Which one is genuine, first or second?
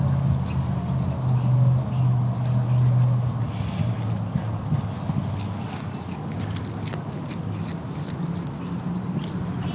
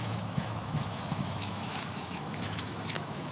first